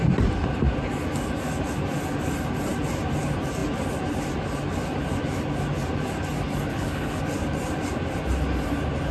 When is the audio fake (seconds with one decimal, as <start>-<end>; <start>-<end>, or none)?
6.7-7.2